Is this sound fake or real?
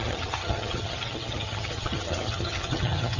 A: fake